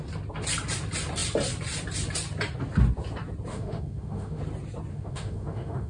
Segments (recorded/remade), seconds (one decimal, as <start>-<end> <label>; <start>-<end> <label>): 0.0-3.5 recorded; 3.5-4.4 remade; 4.4-4.9 recorded; 4.9-5.9 remade